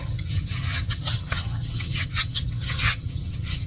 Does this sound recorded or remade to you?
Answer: remade